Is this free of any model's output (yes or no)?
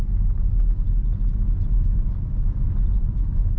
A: yes